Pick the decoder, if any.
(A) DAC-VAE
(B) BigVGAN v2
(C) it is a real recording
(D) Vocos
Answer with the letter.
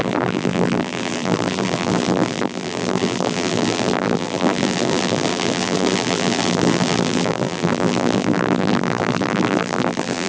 B